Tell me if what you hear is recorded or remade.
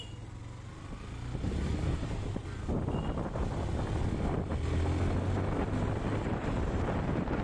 recorded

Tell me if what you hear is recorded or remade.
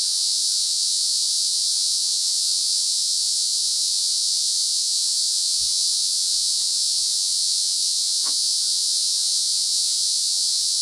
remade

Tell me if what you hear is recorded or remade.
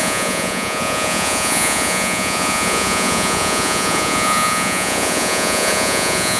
remade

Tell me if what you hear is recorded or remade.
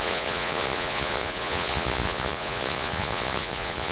remade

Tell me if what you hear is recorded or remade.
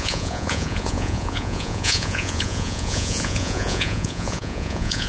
remade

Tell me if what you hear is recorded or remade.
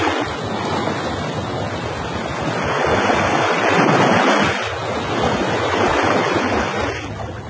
recorded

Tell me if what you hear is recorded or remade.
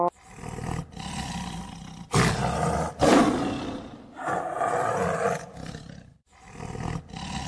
recorded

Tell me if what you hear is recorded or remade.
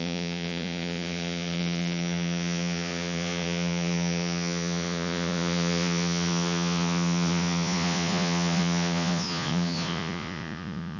remade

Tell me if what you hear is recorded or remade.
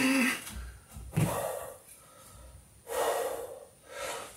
recorded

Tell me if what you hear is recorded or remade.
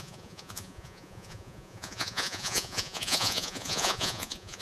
remade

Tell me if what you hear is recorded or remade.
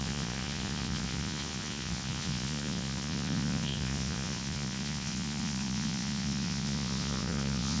remade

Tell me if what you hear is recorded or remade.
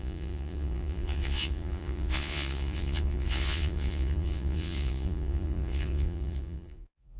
remade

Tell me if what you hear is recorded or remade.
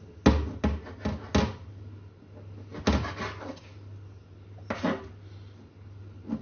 recorded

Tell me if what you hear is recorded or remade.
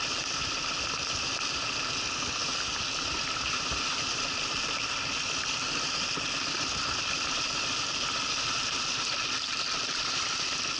recorded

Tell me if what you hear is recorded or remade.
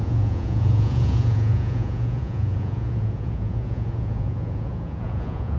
remade